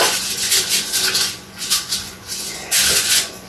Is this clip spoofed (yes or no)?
yes